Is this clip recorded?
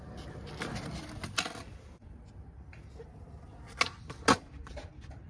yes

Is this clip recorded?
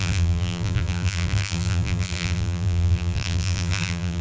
no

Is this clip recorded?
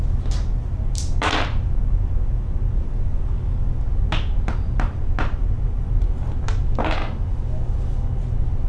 yes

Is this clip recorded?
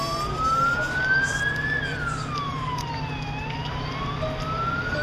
yes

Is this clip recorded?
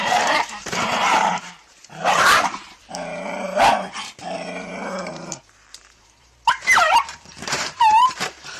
no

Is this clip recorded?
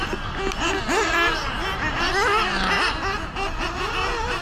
yes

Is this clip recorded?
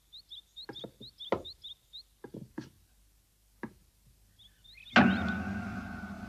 yes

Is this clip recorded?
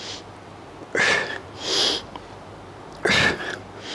yes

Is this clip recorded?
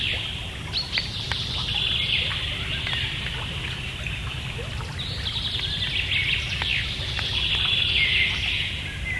yes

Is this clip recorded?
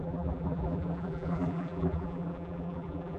no